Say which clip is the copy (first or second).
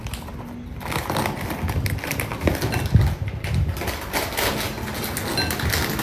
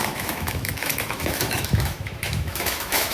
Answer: second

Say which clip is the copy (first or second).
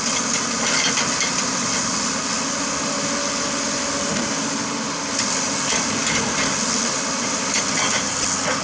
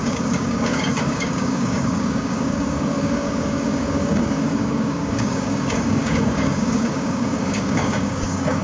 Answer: second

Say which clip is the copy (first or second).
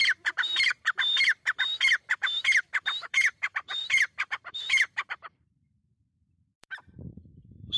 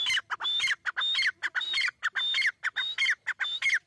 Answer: first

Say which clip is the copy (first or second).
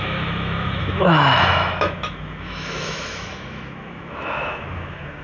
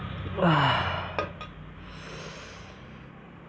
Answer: first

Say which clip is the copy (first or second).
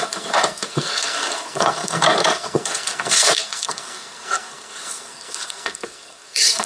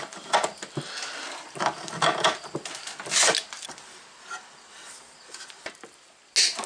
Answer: first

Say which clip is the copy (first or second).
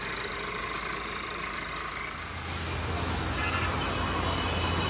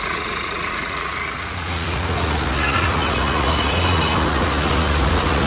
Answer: second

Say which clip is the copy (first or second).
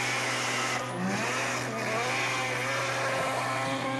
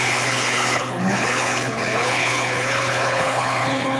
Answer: second